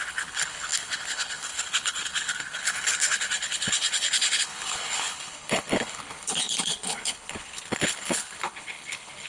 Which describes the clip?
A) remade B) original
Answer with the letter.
A